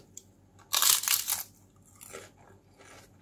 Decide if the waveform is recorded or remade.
recorded